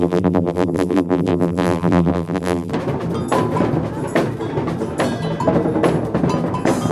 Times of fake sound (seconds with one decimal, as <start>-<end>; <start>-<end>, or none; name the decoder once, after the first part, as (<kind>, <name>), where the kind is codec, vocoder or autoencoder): 0.0-2.7 (vocoder, BigVGAN v2)